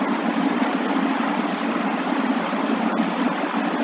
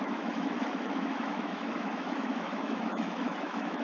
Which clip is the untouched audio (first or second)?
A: first